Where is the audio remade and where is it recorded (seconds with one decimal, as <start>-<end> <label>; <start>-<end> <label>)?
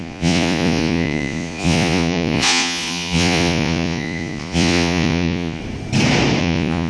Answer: 0.0-5.6 remade; 5.6-6.4 recorded; 6.4-6.9 remade